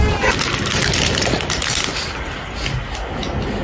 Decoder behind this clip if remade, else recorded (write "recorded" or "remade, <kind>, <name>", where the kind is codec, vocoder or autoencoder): recorded